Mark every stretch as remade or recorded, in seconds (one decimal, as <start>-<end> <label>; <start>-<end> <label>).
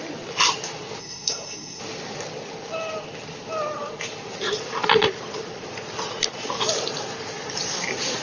0.0-1.0 recorded; 1.0-1.8 remade; 1.8-8.2 recorded